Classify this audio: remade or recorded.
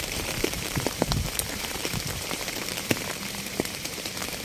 remade